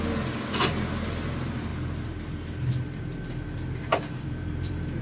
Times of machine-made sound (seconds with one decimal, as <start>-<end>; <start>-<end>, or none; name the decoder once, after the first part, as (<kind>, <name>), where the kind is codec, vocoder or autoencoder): 3.9-5.0 (vocoder, BigVGAN v2)